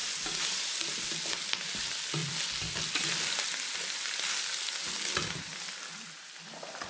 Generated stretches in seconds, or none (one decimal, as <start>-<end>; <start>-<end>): none